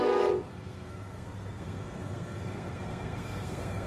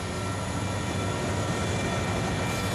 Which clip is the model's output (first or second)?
first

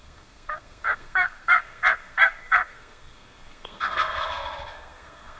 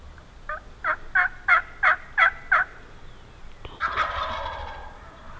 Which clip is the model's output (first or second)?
first